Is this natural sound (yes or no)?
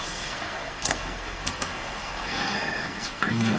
no